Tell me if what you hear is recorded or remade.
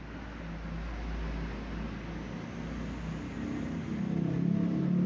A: recorded